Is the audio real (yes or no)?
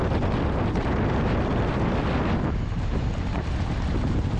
yes